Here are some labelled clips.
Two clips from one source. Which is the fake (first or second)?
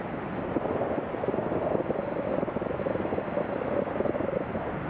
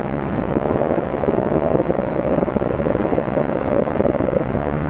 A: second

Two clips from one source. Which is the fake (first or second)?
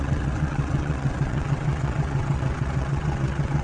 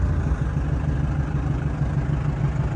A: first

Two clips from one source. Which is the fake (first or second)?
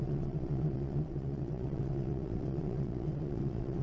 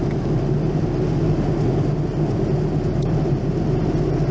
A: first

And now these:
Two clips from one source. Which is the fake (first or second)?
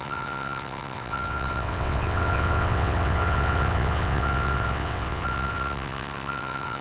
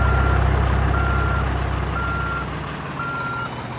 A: first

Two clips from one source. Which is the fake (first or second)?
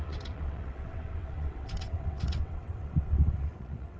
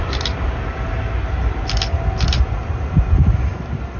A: first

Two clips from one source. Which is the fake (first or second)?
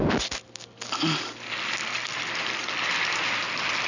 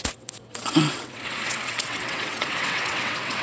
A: second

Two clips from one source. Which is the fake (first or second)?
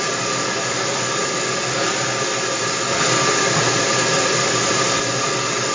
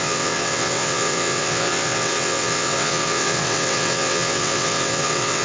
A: second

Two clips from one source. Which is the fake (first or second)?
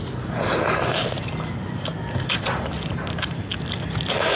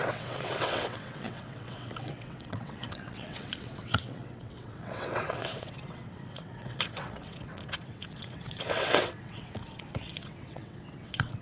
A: second